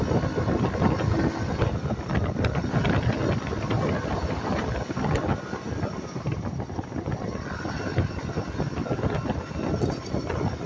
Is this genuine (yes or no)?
yes